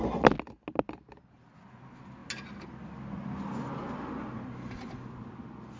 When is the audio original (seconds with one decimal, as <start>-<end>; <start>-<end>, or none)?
0.0-5.8